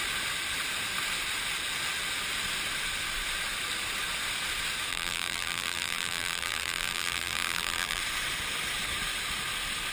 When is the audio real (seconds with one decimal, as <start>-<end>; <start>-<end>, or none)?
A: 0.0-4.9; 8.0-9.9